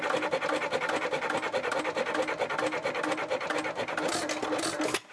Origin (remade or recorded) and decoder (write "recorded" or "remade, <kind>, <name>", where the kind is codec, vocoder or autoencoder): recorded